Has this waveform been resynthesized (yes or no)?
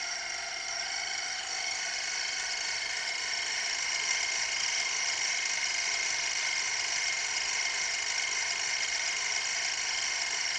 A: no